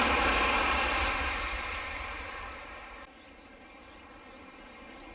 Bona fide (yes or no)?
no